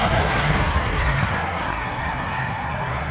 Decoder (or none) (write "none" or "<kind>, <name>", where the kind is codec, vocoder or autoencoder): codec, SNAC